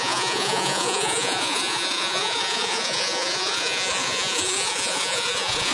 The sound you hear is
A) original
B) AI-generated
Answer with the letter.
B